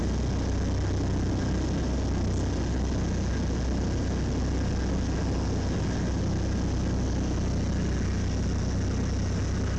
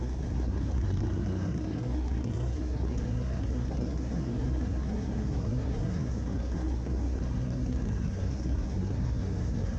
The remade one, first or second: second